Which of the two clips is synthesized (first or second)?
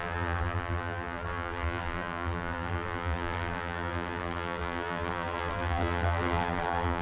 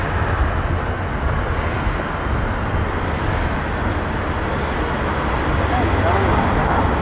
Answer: first